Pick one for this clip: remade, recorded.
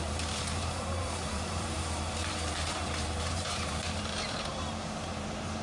remade